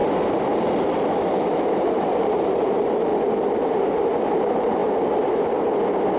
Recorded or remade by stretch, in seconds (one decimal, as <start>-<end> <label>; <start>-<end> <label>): 0.0-1.2 recorded; 1.2-3.1 remade; 3.1-3.8 recorded; 3.8-4.8 remade; 4.8-6.2 recorded